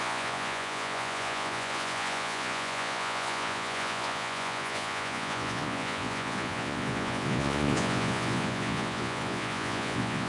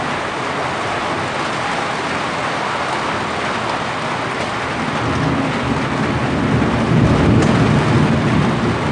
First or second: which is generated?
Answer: first